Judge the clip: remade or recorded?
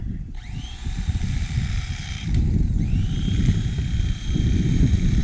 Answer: remade